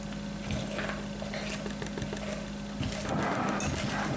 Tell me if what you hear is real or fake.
real